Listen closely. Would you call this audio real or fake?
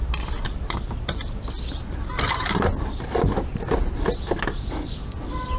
real